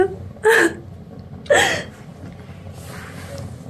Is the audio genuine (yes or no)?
yes